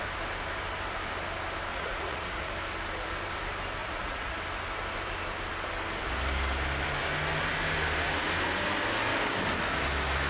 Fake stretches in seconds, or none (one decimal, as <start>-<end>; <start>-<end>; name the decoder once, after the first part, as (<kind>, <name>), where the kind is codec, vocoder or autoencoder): 1.7-2.5 (vocoder, Vocos); 3.8-4.4